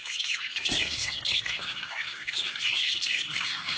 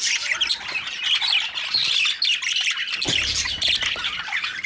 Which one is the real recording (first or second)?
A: second